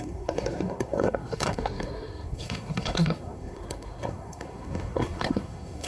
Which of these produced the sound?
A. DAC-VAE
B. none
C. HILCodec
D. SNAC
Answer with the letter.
D